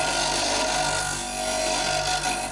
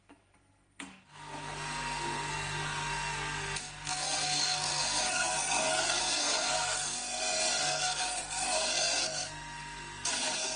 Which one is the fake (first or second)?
second